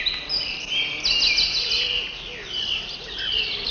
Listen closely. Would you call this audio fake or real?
real